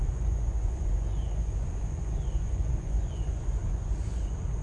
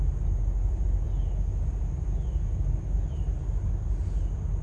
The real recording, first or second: second